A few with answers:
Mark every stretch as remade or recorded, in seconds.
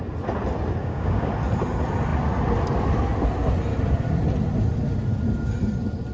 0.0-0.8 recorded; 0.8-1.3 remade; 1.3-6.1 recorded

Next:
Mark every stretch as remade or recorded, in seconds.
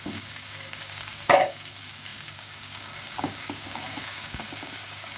0.0-5.2 remade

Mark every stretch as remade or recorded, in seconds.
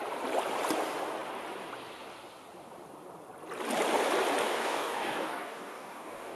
0.0-4.4 recorded; 4.4-6.4 remade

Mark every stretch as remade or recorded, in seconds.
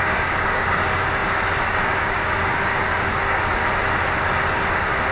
0.0-3.6 remade; 3.6-4.5 recorded; 4.5-5.1 remade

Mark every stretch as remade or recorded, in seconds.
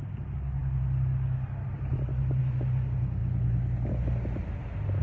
0.0-5.0 recorded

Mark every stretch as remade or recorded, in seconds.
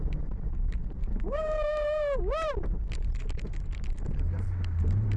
0.0-1.0 recorded; 1.0-2.2 remade; 2.2-5.2 recorded